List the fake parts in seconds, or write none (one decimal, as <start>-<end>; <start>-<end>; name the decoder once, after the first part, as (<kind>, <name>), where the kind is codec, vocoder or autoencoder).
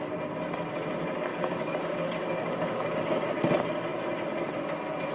1.3-3.4 (codec, DAC)